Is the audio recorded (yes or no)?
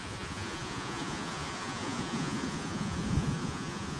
no